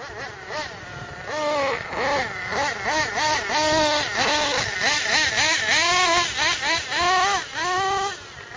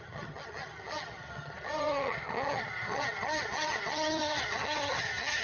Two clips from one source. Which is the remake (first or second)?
second